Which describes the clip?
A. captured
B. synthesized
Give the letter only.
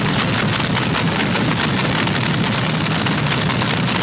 A